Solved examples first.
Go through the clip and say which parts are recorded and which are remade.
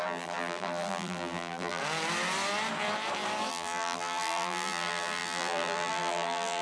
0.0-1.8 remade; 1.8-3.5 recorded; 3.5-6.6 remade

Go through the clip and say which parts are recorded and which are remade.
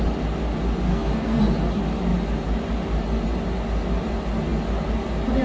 0.0-0.9 recorded; 0.9-1.4 remade; 1.4-5.4 recorded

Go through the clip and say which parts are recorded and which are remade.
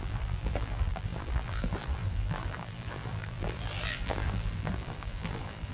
0.0-5.7 remade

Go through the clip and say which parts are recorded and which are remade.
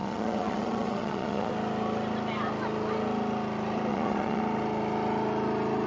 0.0-1.5 remade; 1.5-3.9 recorded; 3.9-4.4 remade; 4.4-5.9 recorded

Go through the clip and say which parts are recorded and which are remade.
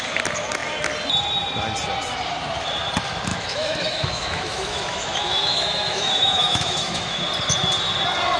0.0-3.3 recorded; 3.3-7.2 remade; 7.2-8.4 recorded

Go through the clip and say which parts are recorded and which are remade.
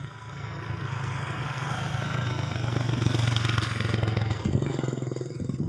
0.0-5.7 remade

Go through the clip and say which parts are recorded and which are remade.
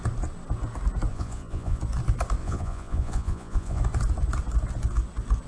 0.0-1.1 recorded; 1.1-1.8 remade; 1.8-2.4 recorded; 2.4-3.8 remade; 3.8-5.5 recorded